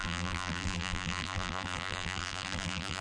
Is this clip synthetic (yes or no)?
yes